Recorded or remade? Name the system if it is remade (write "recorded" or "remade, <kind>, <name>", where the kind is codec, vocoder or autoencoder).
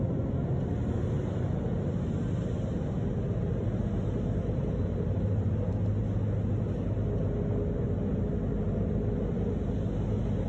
recorded